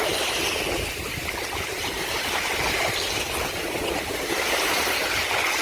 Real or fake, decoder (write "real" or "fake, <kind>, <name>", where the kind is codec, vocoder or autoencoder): real